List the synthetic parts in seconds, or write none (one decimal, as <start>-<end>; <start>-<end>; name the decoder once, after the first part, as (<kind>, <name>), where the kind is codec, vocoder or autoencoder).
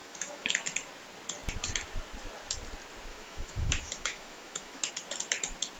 0.0-0.5 (autoencoder, DAC-VAE); 3.1-4.9